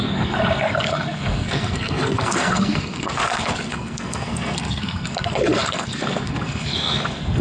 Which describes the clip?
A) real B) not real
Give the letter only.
B